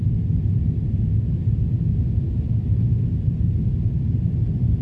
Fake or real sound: real